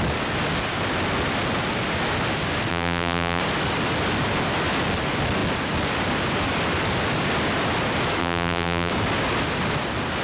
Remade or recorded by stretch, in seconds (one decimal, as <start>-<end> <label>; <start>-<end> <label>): 0.0-2.7 recorded; 2.7-3.4 remade; 3.4-8.2 recorded; 8.2-8.9 remade; 8.9-10.2 recorded